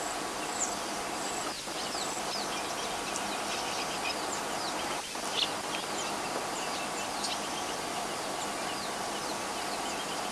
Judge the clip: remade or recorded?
recorded